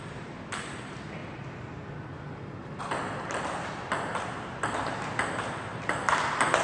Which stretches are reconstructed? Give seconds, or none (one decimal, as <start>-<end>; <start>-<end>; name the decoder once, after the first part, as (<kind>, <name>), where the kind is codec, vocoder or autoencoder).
5.7-6.6 (vocoder, BigVGAN v2)